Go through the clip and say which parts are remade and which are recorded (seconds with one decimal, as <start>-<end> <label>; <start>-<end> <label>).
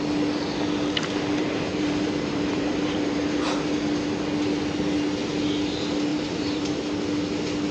0.0-1.4 recorded; 1.4-3.7 remade; 3.7-6.1 recorded; 6.1-6.8 remade; 6.8-7.7 recorded